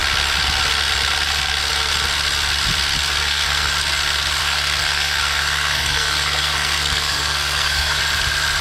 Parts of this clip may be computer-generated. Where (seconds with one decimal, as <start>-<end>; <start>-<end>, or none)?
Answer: 3.2-3.7; 4.4-8.0